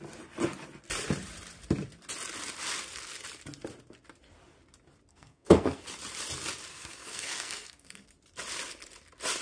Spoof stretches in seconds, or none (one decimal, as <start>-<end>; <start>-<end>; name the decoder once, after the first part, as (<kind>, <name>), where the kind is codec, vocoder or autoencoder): 5.1-5.8 (codec, SNAC); 6.7-8.1